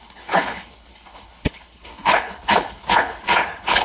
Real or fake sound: fake